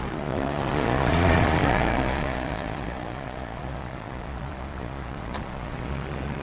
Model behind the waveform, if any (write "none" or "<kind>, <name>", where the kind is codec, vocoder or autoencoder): vocoder, Vocos